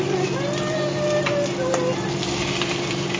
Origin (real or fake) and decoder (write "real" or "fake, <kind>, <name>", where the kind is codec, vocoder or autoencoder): real